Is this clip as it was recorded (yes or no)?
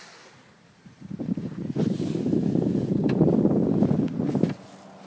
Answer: yes